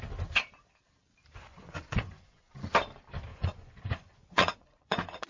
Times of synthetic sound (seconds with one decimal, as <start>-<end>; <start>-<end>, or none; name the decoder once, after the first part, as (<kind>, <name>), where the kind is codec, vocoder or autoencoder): 1.5-2.5 (vocoder, Vocos); 3.3-5.3